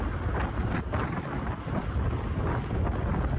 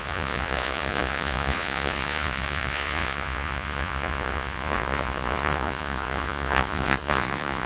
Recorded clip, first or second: first